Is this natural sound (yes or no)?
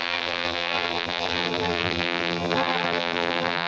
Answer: no